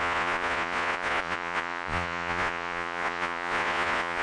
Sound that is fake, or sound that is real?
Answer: fake